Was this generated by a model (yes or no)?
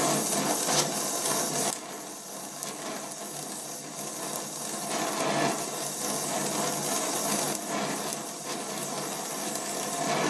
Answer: no